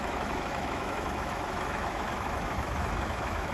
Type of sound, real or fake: fake